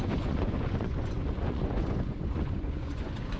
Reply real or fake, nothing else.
fake